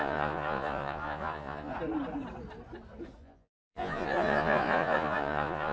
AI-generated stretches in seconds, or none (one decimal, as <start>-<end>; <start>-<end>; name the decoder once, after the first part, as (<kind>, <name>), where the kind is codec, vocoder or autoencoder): 0.0-1.7 (vocoder, Vocos); 3.2-5.7